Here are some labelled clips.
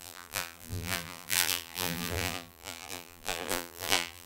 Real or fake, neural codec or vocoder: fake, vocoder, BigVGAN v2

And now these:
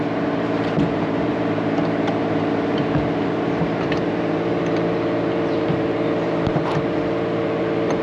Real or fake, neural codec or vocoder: fake, vocoder, BigVGAN v2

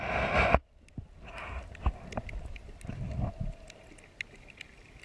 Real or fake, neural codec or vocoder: real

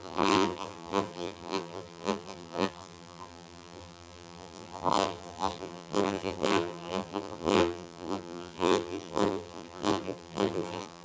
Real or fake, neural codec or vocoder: fake, vocoder, BigVGAN v2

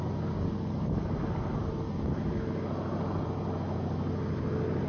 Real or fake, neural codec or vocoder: real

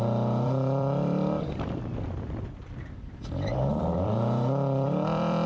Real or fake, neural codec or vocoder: fake, vocoder, BigVGAN v2